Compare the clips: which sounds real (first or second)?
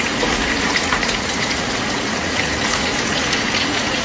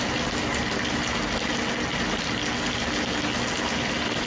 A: second